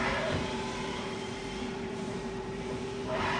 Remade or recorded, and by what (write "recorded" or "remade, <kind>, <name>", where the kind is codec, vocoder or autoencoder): remade, vocoder, BigVGAN v2